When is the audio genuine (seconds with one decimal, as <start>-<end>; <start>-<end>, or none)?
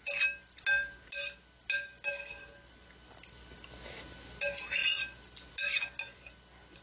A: 0.0-6.8